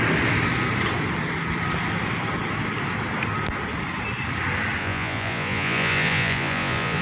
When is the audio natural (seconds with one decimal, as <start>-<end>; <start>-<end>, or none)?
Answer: 0.0-4.8